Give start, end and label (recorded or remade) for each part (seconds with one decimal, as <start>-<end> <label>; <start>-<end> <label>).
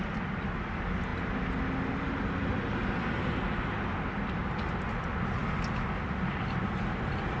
0.0-7.4 recorded